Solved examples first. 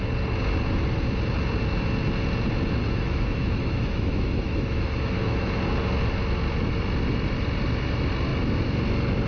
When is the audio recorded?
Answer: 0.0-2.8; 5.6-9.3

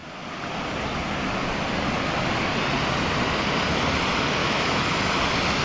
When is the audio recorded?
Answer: 0.0-4.4; 4.9-5.6

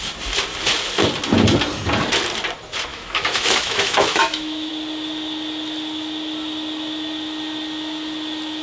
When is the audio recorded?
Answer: 0.0-2.9; 4.7-8.6

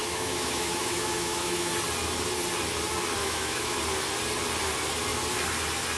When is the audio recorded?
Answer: 1.7-3.2; 3.8-6.0